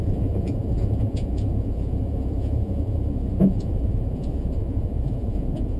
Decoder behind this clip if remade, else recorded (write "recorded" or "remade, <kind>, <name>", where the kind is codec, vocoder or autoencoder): remade, vocoder, Vocos